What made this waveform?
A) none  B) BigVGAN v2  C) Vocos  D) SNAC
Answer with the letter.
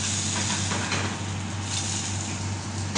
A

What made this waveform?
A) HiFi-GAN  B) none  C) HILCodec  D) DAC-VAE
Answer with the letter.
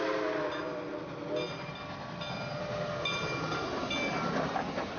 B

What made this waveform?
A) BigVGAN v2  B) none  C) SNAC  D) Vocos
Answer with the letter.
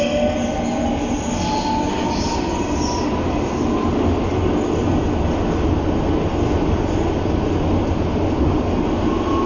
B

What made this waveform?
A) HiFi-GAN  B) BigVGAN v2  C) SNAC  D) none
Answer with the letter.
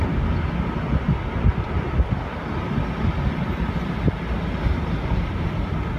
D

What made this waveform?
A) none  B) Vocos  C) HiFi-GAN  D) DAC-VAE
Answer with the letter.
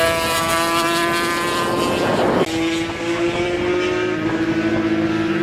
A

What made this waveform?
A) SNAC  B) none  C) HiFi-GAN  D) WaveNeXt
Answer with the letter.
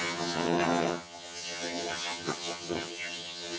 C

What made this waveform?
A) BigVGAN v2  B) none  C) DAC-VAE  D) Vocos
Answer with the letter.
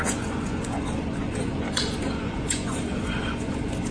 D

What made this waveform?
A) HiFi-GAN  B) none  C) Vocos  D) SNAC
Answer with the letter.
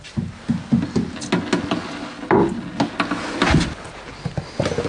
B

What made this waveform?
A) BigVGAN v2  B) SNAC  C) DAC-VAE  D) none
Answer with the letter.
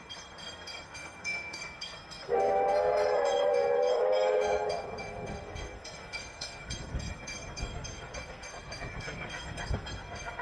B